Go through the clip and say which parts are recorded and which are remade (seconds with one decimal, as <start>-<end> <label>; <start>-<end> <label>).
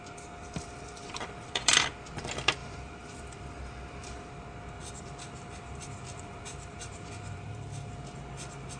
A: 0.0-0.4 recorded; 0.4-1.9 remade; 1.9-2.6 recorded; 2.6-3.6 remade; 3.6-4.0 recorded; 4.0-8.1 remade; 8.1-8.8 recorded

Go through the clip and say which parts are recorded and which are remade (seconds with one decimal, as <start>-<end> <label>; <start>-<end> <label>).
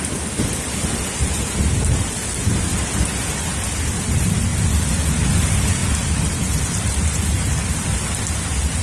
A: 0.0-2.7 remade; 2.7-3.3 recorded; 3.3-8.8 remade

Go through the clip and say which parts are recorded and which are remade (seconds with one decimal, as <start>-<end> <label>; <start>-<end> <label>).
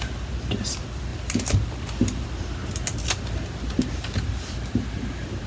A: 0.0-5.5 recorded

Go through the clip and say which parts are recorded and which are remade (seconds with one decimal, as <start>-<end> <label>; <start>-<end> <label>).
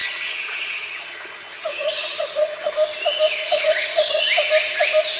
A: 0.0-2.7 remade; 2.7-3.4 recorded; 3.4-4.2 remade; 4.2-5.2 recorded